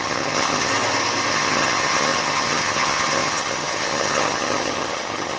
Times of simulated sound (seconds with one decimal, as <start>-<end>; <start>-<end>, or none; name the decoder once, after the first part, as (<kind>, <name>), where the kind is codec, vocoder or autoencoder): 0.0-0.7 (vocoder, HiFi-GAN); 1.3-5.4